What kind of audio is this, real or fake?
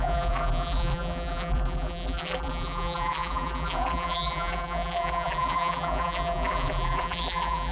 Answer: fake